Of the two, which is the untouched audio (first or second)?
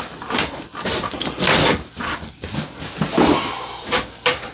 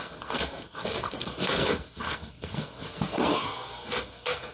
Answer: first